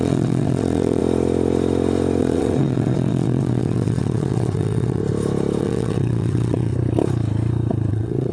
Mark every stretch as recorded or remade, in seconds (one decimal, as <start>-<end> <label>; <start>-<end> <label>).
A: 0.0-1.0 remade; 1.0-2.2 recorded; 2.2-5.0 remade; 5.0-5.6 recorded; 5.6-6.7 remade; 6.7-7.9 recorded; 7.9-8.3 remade